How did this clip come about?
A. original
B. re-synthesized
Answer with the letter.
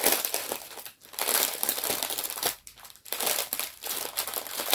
B